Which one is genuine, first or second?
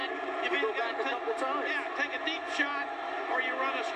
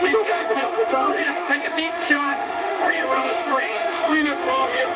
first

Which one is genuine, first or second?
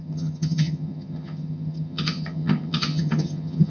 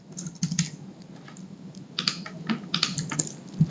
second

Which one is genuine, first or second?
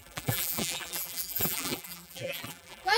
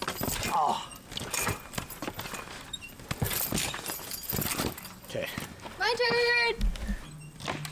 second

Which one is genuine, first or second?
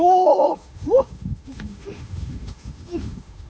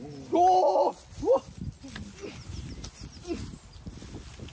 second